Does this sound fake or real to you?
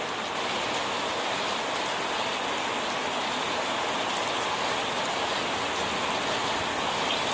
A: real